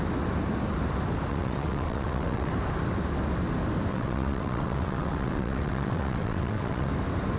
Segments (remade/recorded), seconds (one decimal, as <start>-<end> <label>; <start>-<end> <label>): 0.0-1.3 recorded; 1.3-2.5 remade; 2.5-3.9 recorded; 3.9-6.9 remade; 6.9-7.4 recorded